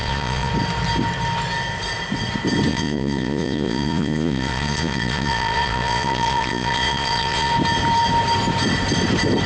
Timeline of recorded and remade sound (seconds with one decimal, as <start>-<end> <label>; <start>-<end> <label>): 0.0-0.5 remade; 0.5-2.7 recorded; 2.7-7.5 remade; 7.5-9.5 recorded